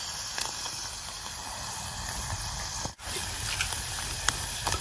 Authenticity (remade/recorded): recorded